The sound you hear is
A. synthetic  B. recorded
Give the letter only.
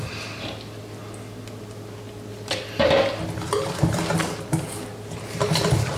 B